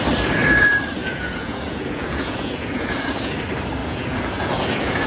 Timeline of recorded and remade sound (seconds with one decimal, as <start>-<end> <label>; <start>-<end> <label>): 0.0-1.0 recorded; 1.0-3.3 remade; 3.3-3.8 recorded; 3.8-5.1 remade